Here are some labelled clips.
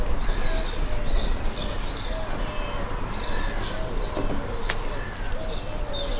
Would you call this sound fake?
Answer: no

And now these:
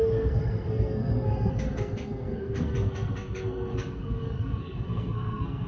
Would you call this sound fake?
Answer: yes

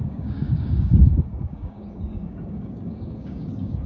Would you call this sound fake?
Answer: yes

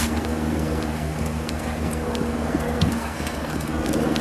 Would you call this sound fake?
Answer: yes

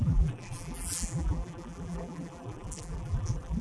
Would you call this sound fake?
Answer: yes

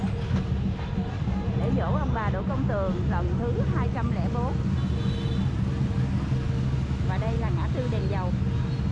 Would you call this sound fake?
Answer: no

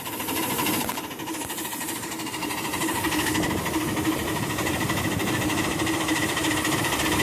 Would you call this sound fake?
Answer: yes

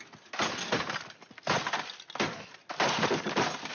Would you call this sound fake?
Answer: no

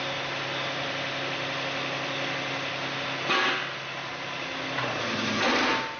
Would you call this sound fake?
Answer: no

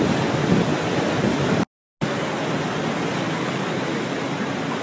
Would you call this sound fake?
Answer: no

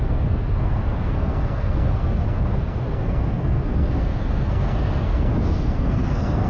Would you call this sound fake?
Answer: yes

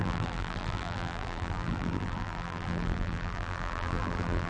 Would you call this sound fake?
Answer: yes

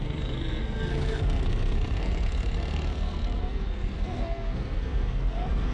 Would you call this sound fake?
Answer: yes